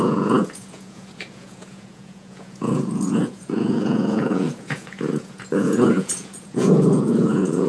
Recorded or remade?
remade